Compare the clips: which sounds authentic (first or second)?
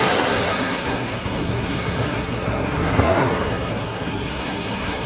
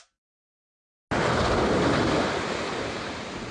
second